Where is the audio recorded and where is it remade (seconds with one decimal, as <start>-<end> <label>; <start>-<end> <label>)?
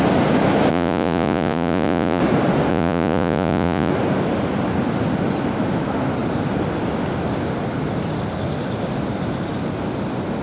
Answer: 0.0-0.7 recorded; 0.7-2.2 remade; 2.2-2.7 recorded; 2.7-3.9 remade; 3.9-10.4 recorded